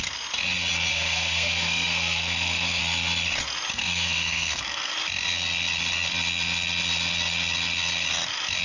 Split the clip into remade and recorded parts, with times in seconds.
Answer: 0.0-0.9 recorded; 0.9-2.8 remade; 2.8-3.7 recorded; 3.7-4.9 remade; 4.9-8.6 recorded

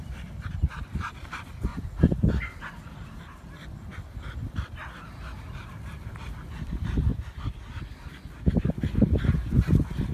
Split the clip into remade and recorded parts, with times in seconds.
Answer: 0.0-1.7 remade; 1.7-2.7 recorded; 2.7-3.9 remade; 3.9-5.6 recorded; 5.6-7.1 remade; 7.1-8.5 recorded; 8.5-10.1 remade

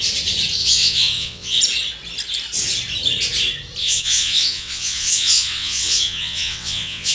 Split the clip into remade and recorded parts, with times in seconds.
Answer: 0.0-0.6 recorded; 0.6-1.6 remade; 1.6-3.8 recorded; 3.8-7.1 remade

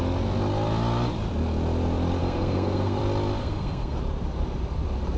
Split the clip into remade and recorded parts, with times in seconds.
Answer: 0.0-2.2 recorded; 2.2-3.0 remade; 3.0-3.4 recorded; 3.4-4.0 remade; 4.0-5.2 recorded